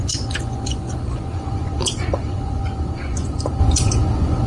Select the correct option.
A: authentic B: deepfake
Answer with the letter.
B